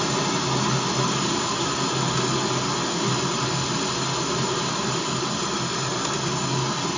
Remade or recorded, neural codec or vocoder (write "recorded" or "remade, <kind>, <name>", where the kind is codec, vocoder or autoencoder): recorded